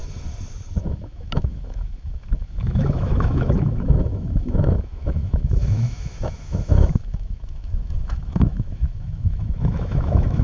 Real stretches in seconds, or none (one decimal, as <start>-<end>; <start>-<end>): 0.0-0.8